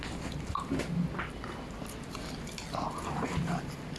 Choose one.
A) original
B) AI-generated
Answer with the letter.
A